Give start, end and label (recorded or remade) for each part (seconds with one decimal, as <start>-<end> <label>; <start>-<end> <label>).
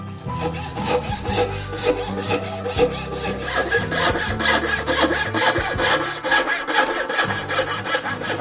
0.0-0.7 recorded; 0.7-1.9 remade; 1.9-8.4 recorded